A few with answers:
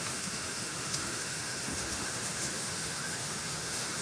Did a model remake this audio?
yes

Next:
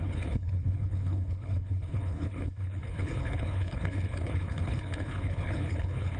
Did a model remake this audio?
yes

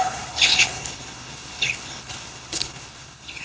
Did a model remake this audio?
yes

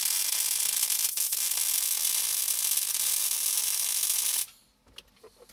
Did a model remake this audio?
no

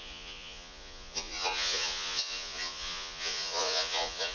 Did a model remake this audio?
yes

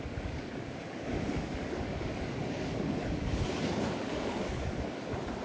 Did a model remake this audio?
yes